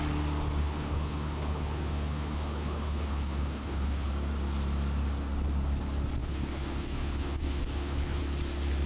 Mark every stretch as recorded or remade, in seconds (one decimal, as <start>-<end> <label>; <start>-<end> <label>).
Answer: 0.0-0.6 recorded; 0.6-4.1 remade; 4.1-6.2 recorded; 6.2-8.2 remade; 8.2-8.9 recorded